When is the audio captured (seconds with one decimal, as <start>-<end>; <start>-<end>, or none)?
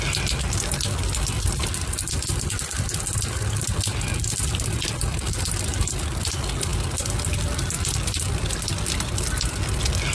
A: 0.0-10.1